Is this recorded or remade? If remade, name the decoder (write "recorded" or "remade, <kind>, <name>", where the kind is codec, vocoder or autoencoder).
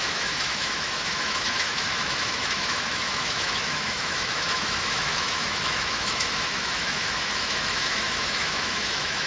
remade, autoencoder, DAC-VAE